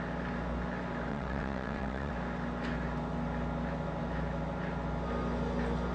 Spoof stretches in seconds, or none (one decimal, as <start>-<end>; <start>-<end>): 1.1-2.1